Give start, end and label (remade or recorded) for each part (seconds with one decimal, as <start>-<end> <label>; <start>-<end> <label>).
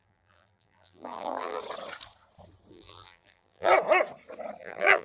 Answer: 0.0-1.6 remade; 1.6-2.7 recorded; 2.7-3.7 remade; 3.7-4.6 recorded; 4.6-5.0 remade